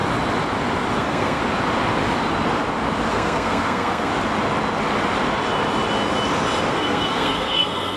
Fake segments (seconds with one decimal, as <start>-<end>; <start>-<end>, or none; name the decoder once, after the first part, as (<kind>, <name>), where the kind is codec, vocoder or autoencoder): 0.9-1.4 (codec, SNAC); 3.1-4.1; 6.7-8.0